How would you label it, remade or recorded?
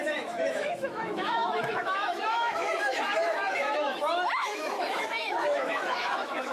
remade